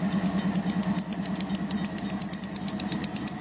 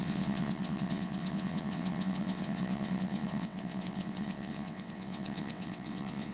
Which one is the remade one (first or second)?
second